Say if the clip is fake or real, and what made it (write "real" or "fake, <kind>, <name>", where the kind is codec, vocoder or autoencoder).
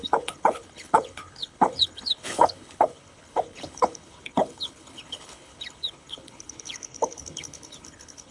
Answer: fake, codec, HILCodec